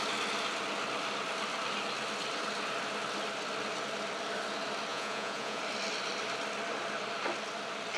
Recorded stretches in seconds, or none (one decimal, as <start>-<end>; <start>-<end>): 0.0-4.9; 5.6-8.0